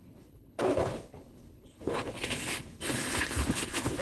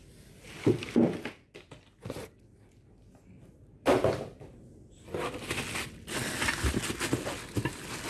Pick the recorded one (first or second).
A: second